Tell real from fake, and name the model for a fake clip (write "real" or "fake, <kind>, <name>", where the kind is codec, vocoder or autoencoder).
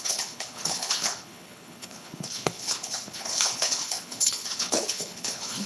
fake, codec, HILCodec